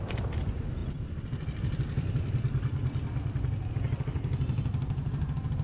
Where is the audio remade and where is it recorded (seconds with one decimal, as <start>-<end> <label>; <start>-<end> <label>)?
0.0-5.6 recorded